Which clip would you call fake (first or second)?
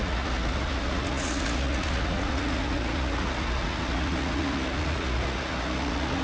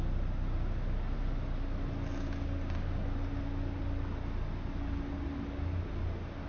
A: first